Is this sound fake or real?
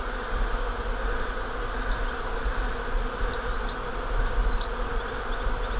real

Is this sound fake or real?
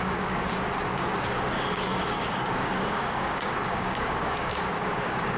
fake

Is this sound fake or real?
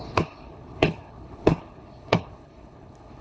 fake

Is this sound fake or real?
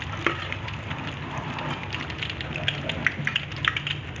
real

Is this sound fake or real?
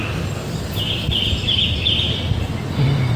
real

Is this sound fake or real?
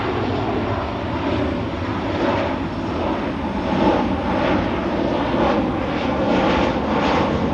real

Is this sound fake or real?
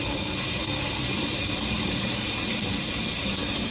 real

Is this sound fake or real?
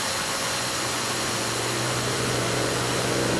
fake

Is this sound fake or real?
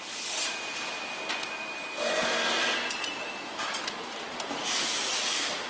real